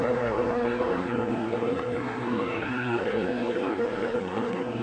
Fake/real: fake